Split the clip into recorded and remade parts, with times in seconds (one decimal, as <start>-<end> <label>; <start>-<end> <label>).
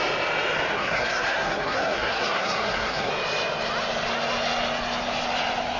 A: 0.0-0.7 recorded; 0.7-3.1 remade; 3.1-5.8 recorded